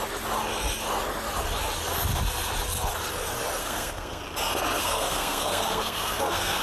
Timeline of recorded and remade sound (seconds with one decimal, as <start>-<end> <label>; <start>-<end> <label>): 0.0-3.6 recorded; 3.6-4.2 remade; 4.2-4.8 recorded; 4.8-6.6 remade